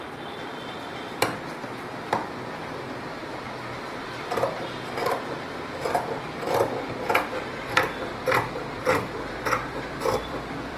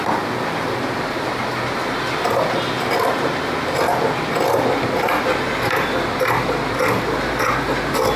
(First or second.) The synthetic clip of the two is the first